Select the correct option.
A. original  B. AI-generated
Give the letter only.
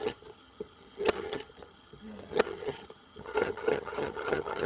B